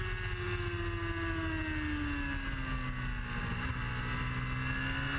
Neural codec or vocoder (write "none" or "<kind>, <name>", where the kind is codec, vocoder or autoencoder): none